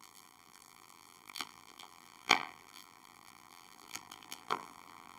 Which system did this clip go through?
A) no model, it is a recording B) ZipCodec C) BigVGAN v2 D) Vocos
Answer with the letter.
C